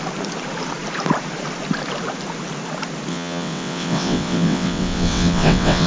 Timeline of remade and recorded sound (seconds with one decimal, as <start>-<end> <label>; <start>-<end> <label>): 0.0-3.1 recorded; 3.1-5.9 remade